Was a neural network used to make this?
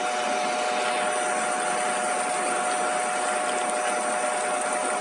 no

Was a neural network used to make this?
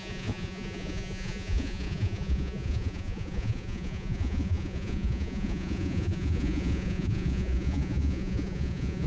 yes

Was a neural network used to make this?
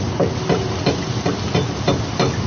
no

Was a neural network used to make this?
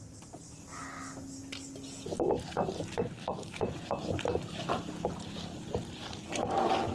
no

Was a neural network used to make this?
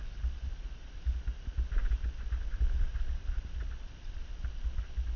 no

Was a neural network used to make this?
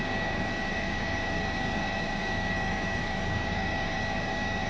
yes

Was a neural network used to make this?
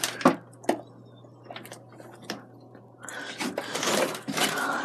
no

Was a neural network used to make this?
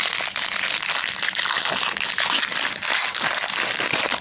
no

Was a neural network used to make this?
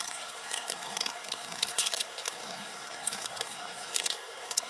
yes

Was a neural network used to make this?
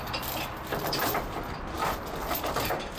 no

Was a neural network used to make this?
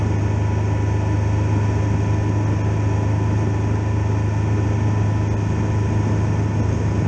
no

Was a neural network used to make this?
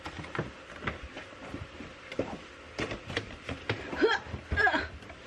no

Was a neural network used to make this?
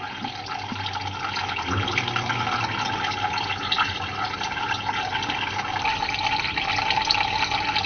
no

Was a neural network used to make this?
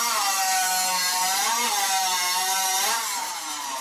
yes